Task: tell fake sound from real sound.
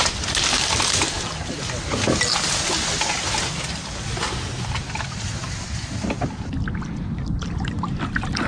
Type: real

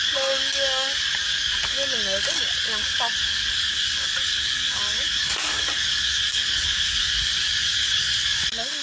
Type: fake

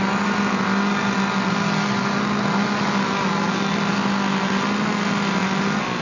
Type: real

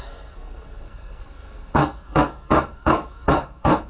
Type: fake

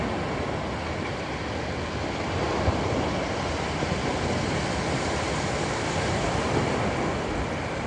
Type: real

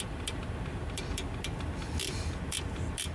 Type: real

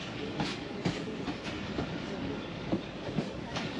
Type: fake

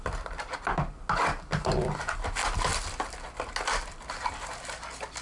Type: real